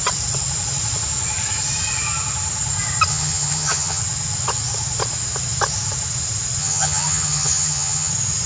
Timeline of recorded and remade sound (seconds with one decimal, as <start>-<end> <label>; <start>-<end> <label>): 0.0-3.1 recorded; 3.1-4.0 remade; 4.0-6.6 recorded; 6.6-8.1 remade; 8.1-8.5 recorded

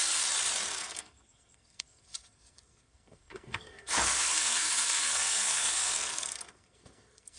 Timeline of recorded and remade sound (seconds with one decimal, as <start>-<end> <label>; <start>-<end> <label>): 0.0-0.8 recorded; 0.8-7.4 remade

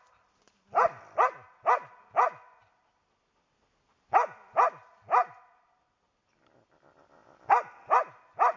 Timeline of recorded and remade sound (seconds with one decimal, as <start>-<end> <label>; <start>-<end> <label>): 0.0-8.6 recorded

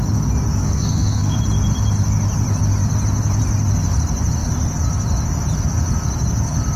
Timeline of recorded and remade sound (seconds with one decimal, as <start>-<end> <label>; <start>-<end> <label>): 0.0-0.6 recorded; 0.6-1.4 remade; 1.4-6.8 recorded